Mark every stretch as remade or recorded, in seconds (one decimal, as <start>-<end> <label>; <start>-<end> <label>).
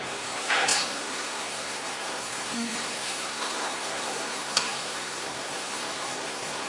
0.0-6.7 remade